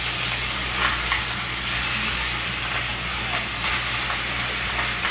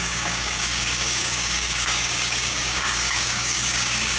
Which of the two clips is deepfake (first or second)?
second